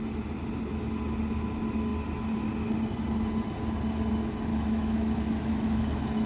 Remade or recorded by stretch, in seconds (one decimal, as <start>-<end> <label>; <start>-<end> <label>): 0.0-4.5 recorded; 4.5-6.3 remade